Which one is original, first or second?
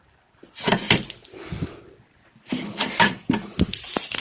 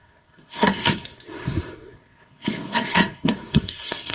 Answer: first